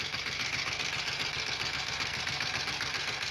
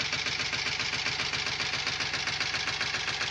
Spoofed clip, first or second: first